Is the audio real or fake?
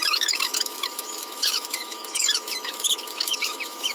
fake